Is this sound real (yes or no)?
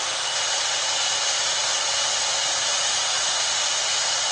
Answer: yes